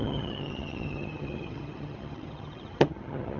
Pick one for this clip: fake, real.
fake